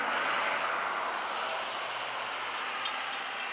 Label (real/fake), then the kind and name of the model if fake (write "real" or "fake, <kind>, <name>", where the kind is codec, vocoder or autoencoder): real